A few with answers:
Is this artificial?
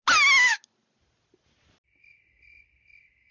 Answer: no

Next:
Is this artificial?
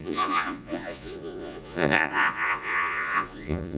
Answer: yes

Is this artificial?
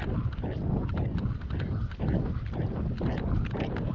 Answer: no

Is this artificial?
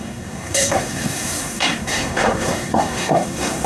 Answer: yes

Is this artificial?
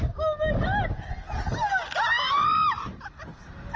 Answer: no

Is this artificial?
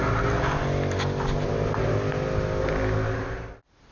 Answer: no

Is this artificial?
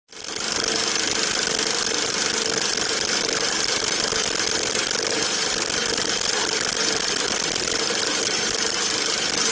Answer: no